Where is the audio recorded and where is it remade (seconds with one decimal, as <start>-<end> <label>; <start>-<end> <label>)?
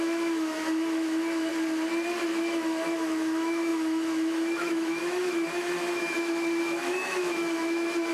0.0-1.5 remade; 1.5-2.2 recorded; 2.2-8.1 remade